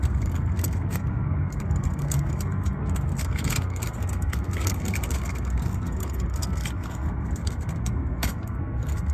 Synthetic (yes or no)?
yes